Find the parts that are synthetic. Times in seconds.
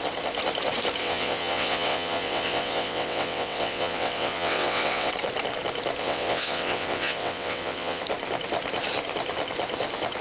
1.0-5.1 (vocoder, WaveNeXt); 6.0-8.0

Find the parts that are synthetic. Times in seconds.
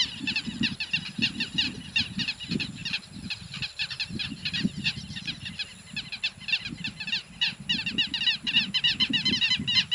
none